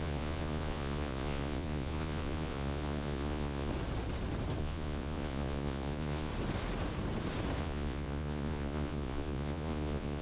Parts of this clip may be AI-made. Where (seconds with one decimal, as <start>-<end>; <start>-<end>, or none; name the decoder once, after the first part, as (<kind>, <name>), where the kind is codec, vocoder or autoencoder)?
0.0-3.7 (vocoder, Vocos); 4.6-6.3; 7.6-10.2

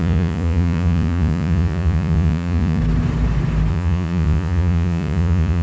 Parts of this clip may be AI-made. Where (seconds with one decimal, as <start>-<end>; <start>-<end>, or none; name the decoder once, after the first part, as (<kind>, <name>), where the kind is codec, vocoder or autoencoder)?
0.0-2.8 (vocoder, Vocos); 3.7-5.6

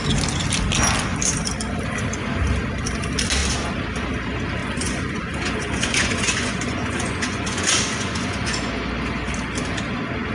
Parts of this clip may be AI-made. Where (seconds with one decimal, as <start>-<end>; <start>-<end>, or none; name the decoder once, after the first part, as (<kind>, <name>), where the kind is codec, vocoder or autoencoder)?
4.6-8.7 (vocoder, Vocos)

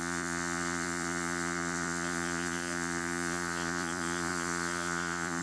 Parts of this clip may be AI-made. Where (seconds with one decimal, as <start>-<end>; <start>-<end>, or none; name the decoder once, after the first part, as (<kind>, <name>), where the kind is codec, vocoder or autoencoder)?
0.0-5.4 (vocoder, Vocos)

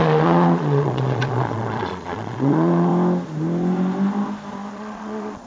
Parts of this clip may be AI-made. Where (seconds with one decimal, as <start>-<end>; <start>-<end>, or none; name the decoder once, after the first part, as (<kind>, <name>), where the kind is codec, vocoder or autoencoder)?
0.0-2.9 (vocoder, Vocos); 4.7-5.5

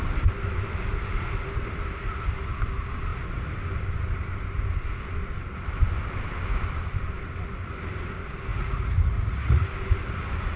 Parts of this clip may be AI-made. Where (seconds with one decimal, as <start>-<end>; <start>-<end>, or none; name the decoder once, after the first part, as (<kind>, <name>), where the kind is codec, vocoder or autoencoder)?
8.5-9.6 (vocoder, Vocos)

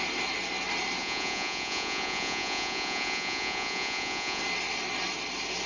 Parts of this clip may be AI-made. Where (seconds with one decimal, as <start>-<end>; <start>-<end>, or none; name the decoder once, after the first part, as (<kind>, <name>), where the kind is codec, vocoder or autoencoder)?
1.0-4.4 (vocoder, Vocos)

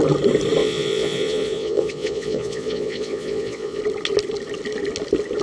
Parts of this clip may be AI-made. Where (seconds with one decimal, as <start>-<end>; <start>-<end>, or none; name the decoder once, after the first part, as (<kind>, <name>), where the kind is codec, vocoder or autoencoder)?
0.6-3.8 (vocoder, Vocos)